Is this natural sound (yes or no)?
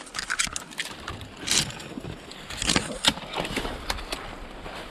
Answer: yes